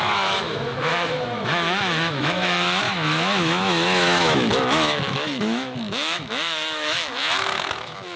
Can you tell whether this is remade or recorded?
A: remade